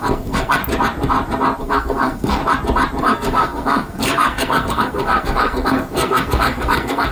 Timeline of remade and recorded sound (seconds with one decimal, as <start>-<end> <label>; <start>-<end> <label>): 0.0-0.6 remade; 0.6-1.6 recorded; 1.6-2.4 remade; 2.4-3.0 recorded; 3.0-7.1 remade